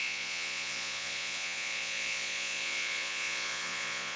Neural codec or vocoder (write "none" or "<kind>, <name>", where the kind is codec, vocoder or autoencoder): vocoder, Vocos